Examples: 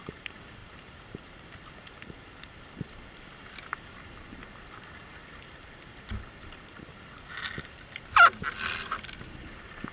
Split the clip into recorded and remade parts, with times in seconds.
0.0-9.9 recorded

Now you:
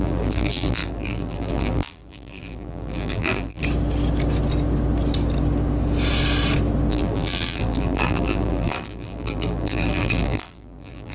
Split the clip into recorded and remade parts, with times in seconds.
0.0-3.6 remade; 3.6-6.9 recorded; 6.9-11.1 remade

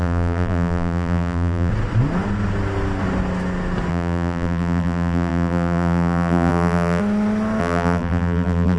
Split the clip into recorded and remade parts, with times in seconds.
0.0-1.7 remade; 1.7-3.9 recorded; 3.9-7.0 remade; 7.0-7.6 recorded; 7.6-8.8 remade

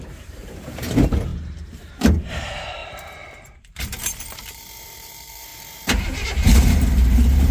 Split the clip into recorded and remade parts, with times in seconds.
0.0-7.5 remade

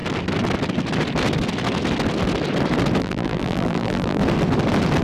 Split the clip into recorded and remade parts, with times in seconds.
0.0-3.0 recorded; 3.0-4.2 remade; 4.2-5.0 recorded

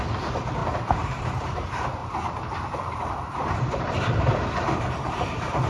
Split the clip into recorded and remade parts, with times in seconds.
0.0-0.6 recorded; 0.6-1.2 remade; 1.2-2.0 recorded; 2.0-5.7 remade

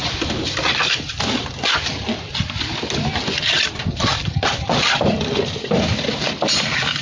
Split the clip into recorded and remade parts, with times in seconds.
0.0-2.3 remade; 2.3-4.2 recorded; 4.2-7.0 remade